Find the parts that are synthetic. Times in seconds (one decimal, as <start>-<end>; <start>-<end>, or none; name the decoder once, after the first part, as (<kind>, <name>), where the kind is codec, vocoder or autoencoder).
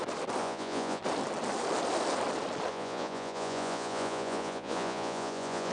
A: 0.4-1.0 (vocoder, Vocos); 2.7-5.7